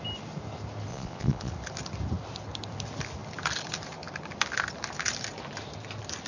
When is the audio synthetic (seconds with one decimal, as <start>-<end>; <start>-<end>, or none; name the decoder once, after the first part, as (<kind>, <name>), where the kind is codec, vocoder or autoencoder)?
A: 0.9-1.5 (vocoder, Vocos)